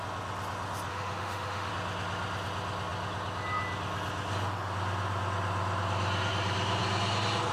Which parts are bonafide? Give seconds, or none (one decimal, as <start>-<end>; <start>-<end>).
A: 0.0-0.9; 1.7-7.5